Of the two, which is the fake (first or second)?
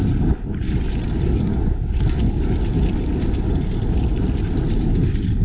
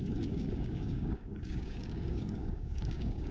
second